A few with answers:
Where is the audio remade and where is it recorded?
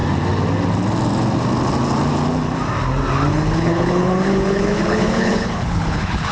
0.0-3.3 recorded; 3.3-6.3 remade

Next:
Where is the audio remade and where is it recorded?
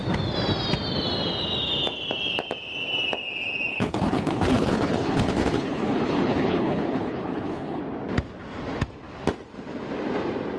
0.0-3.7 recorded; 3.7-7.8 remade; 7.8-10.6 recorded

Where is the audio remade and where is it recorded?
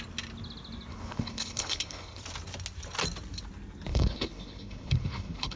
0.0-0.9 recorded; 0.9-2.2 remade; 2.2-3.9 recorded; 3.9-5.6 remade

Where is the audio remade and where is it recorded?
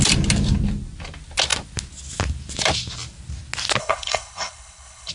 0.0-3.8 recorded; 3.8-5.1 remade